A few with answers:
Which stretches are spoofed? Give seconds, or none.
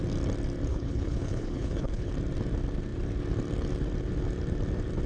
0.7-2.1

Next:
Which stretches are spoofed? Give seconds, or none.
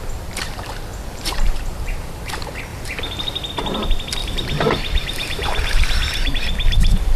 0.9-2.3; 2.7-3.5; 4.2-6.3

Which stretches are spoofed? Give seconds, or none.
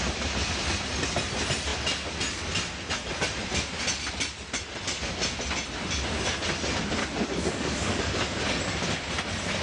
7.0-8.4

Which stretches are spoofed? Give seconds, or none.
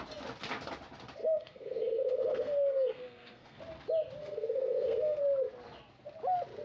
1.2-3.6; 4.2-5.2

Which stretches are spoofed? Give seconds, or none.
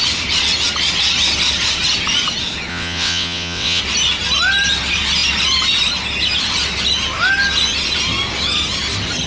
2.7-3.8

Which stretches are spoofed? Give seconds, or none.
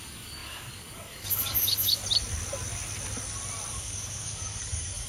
0.0-2.0; 3.7-5.1